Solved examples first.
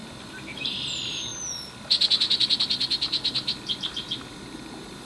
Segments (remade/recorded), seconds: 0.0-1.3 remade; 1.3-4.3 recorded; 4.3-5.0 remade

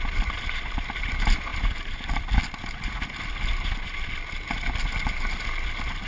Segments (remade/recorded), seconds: 0.0-1.5 recorded; 1.5-2.1 remade; 2.1-6.1 recorded

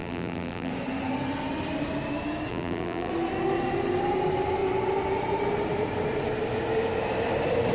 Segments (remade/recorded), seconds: 0.0-0.7 remade; 0.7-2.5 recorded; 2.5-3.1 remade; 3.1-7.7 recorded

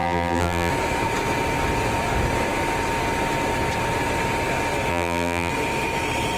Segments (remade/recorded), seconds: 0.0-0.7 remade; 0.7-4.9 recorded; 4.9-5.5 remade; 5.5-6.4 recorded

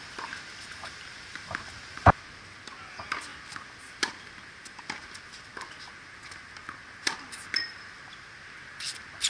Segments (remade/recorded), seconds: 0.0-2.2 remade; 2.2-9.3 recorded